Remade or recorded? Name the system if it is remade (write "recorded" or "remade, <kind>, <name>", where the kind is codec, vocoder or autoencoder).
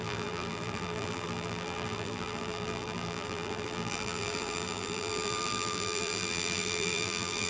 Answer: remade, vocoder, BigVGAN v2